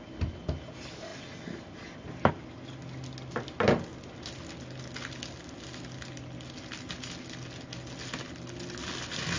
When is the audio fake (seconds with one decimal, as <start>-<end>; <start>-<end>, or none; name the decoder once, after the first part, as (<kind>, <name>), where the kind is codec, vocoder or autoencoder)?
none